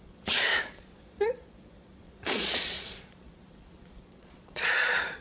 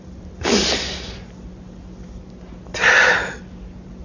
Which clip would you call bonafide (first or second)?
second